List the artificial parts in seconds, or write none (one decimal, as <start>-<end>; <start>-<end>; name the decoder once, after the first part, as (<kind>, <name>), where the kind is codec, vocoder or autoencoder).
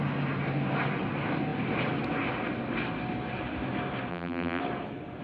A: 4.1-4.6 (vocoder, BigVGAN v2)